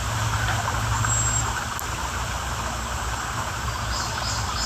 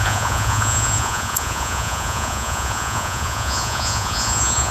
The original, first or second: first